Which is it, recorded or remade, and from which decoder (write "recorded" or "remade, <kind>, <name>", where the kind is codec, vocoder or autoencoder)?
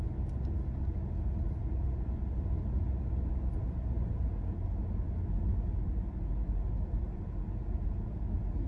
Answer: recorded